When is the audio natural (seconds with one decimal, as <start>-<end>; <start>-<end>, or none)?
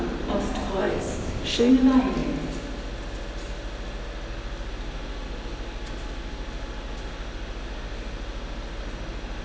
0.0-0.8; 1.7-9.4